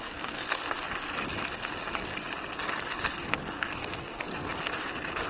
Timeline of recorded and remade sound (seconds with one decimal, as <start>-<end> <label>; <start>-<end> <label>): 0.0-0.5 remade; 0.5-3.7 recorded; 3.7-4.3 remade; 4.3-5.3 recorded